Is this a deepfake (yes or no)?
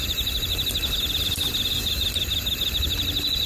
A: no